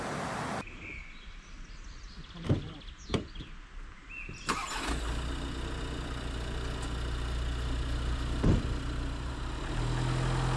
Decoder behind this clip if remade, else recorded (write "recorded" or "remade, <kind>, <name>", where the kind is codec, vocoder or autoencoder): recorded